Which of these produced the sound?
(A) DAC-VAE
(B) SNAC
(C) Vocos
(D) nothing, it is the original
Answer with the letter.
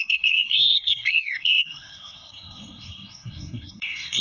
B